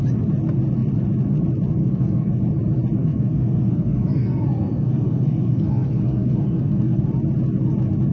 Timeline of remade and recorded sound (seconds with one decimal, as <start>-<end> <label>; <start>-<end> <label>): 0.0-1.8 recorded; 1.8-2.4 remade; 2.4-3.0 recorded; 3.0-7.0 remade; 7.0-8.1 recorded